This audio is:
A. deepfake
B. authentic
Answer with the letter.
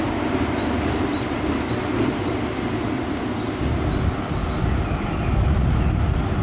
B